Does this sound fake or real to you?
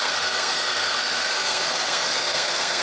fake